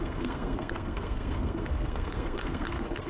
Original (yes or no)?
no